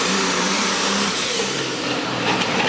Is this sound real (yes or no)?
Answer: no